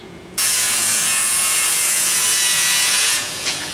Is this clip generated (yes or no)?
yes